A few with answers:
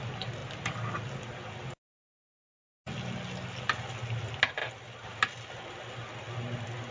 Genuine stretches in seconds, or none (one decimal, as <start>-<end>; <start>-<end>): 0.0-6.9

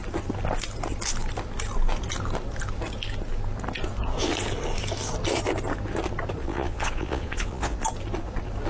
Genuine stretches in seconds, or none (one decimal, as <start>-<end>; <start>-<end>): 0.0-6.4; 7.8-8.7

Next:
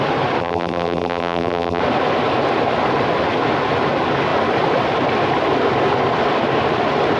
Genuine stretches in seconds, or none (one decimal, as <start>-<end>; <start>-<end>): 0.0-0.4; 1.8-7.2

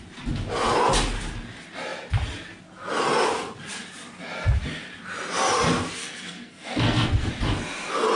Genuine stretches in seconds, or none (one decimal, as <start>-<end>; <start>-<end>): 0.0-6.0; 7.3-8.2

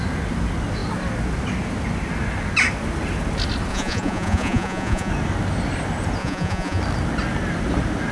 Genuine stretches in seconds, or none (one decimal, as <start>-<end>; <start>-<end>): 0.0-3.7; 5.1-6.2; 6.8-8.1